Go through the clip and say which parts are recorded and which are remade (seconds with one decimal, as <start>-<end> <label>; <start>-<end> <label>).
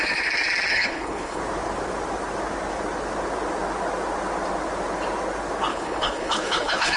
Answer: 0.0-0.7 recorded; 0.7-1.4 remade; 1.4-5.7 recorded; 5.7-7.0 remade